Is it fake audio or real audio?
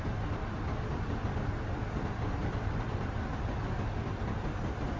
real